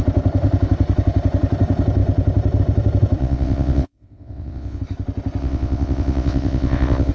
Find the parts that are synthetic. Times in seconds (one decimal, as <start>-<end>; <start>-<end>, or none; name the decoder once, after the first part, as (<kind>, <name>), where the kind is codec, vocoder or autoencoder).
3.2-4.8 (vocoder, WaveNeXt); 5.4-7.1